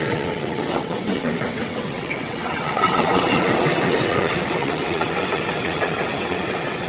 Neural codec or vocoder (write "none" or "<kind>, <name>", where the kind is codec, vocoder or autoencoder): vocoder, WaveNeXt